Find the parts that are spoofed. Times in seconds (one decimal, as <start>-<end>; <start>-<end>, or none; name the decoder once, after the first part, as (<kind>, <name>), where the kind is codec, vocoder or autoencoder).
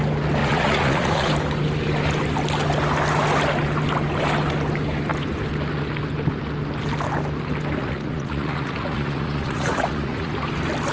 0.4-1.3 (vocoder, Vocos); 7.8-10.3